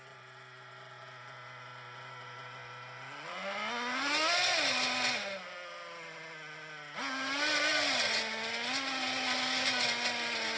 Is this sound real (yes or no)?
yes